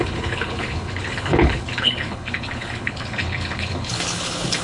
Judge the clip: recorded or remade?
remade